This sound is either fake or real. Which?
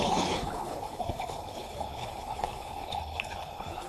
fake